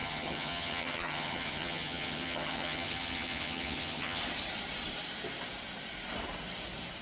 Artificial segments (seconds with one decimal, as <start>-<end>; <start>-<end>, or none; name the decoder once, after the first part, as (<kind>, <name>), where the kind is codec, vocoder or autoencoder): 0.0-4.2 (vocoder, HiFi-GAN)